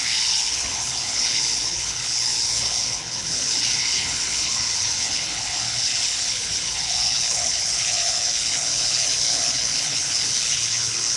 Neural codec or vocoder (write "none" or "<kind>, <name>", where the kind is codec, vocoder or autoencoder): codec, HILCodec